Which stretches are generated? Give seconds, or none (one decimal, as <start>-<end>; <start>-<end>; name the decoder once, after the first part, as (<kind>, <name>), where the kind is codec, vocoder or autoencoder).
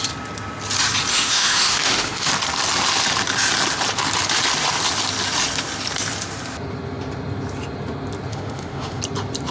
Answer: 1.1-2.3 (autoencoder, DAC-VAE); 8.3-9.0